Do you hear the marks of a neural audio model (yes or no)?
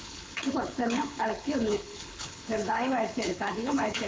yes